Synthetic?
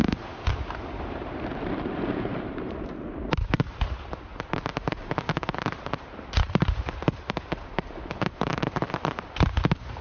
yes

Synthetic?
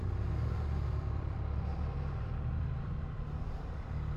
yes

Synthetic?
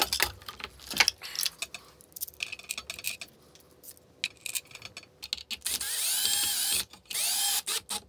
no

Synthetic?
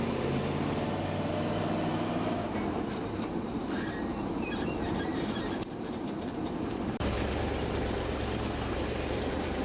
yes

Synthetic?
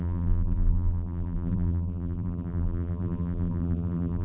yes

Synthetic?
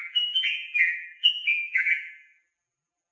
yes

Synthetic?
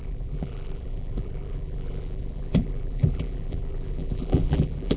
yes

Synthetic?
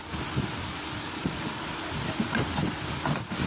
no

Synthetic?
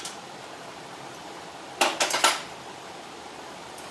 no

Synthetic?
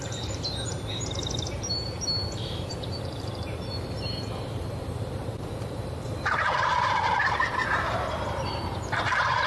yes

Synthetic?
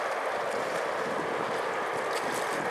no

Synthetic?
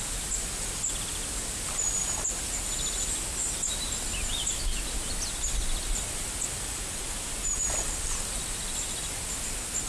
no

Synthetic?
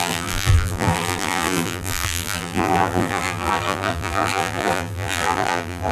yes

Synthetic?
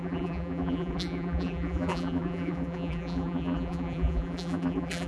yes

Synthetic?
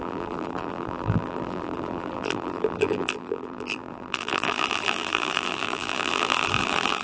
yes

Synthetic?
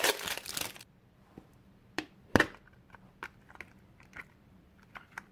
yes